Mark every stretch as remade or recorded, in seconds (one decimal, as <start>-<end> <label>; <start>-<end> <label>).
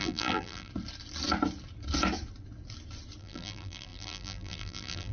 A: 0.0-0.7 remade; 0.7-3.2 recorded; 3.2-5.1 remade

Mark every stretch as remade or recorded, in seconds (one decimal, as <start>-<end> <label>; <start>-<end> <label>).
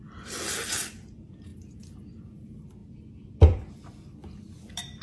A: 0.0-1.5 remade; 1.5-2.4 recorded; 2.4-5.0 remade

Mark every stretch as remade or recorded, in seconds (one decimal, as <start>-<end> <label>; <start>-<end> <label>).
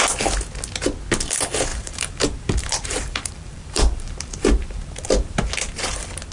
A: 0.0-1.7 recorded; 1.7-5.5 remade; 5.5-6.3 recorded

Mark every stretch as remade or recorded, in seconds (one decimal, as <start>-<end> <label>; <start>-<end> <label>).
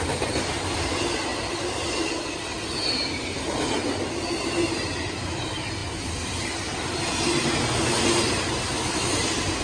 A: 0.0-1.3 recorded; 1.3-2.1 remade; 2.1-9.6 recorded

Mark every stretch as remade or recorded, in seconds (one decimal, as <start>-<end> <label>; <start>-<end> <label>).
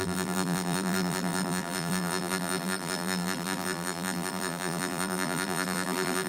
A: 0.0-6.3 remade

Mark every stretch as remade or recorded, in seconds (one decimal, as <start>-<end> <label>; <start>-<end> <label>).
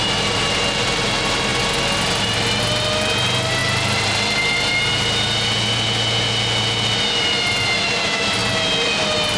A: 0.0-9.4 recorded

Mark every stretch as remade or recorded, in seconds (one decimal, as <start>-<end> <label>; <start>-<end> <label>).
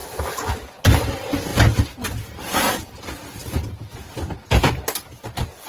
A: 0.0-0.5 remade; 0.5-1.5 recorded; 1.5-3.0 remade; 3.0-3.4 recorded; 3.4-4.1 remade; 4.1-5.7 recorded